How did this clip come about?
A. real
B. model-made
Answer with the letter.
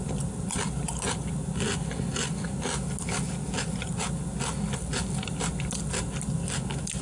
A